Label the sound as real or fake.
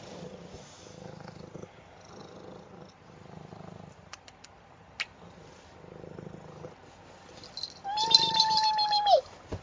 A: real